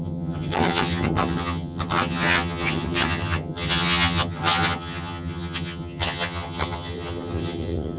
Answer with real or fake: fake